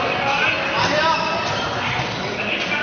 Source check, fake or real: real